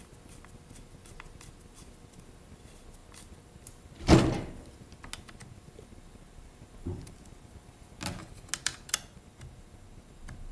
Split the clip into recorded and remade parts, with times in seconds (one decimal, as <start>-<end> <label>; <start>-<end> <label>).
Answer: 0.0-10.5 recorded